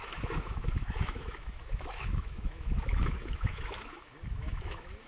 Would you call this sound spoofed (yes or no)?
yes